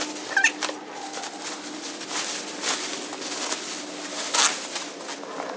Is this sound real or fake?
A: real